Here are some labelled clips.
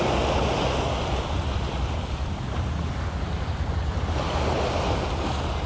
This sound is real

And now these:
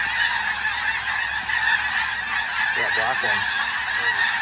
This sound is real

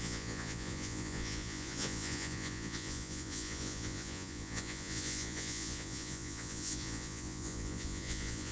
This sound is fake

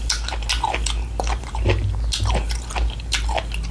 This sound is real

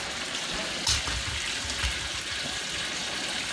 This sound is real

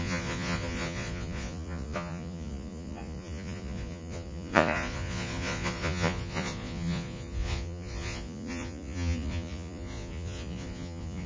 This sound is fake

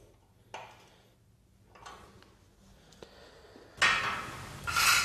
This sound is real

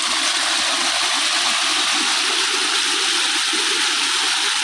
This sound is real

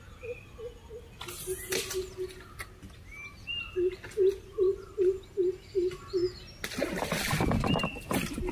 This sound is real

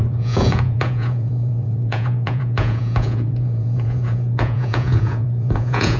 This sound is fake